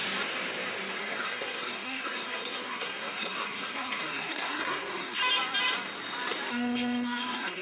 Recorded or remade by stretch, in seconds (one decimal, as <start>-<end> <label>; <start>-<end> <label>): 0.0-1.0 recorded; 1.0-5.2 remade; 5.2-6.5 recorded; 6.5-7.6 remade